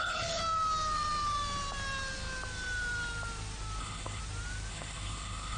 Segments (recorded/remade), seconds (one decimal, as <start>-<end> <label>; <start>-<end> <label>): 0.0-0.4 remade; 0.4-3.8 recorded; 3.8-4.2 remade; 4.2-4.7 recorded; 4.7-5.6 remade